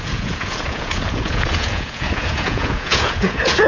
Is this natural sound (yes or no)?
no